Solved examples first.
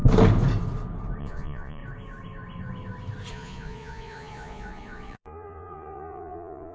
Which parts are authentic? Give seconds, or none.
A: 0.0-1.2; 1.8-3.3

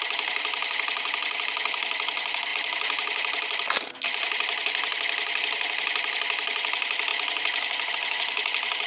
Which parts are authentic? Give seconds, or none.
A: 0.0-8.9

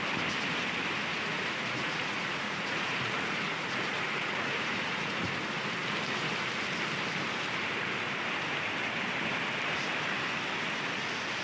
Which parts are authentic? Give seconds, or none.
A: 0.0-1.1; 5.3-11.4

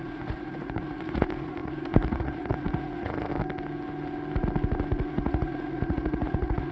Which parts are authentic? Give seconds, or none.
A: 3.3-5.1

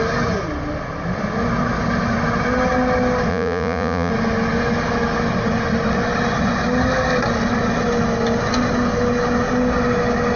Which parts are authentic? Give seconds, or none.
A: 0.0-3.3; 4.1-10.4

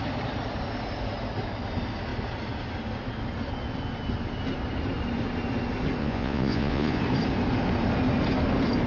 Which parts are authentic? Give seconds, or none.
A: 0.0-6.0; 7.0-8.9

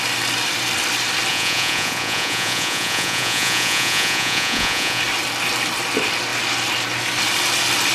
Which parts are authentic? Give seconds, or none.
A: 0.0-1.3; 5.0-7.9